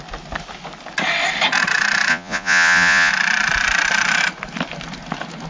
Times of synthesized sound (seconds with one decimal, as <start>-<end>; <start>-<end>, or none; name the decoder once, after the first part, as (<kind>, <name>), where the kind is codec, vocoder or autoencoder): 2.1-3.1 (vocoder, Vocos)